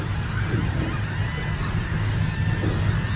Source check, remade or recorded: recorded